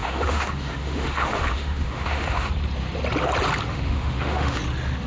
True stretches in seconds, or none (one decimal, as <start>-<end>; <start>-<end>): 2.5-3.7; 4.6-5.1

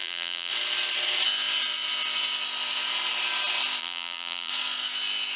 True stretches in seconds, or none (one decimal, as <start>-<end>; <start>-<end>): 0.5-3.8; 4.5-5.4